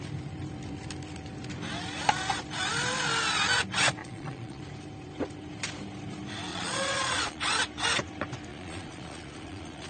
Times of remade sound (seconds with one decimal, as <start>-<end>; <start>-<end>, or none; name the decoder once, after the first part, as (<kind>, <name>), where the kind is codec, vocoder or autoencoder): 4.0-4.6 (vocoder, Vocos); 6.5-7.4; 8.5-9.9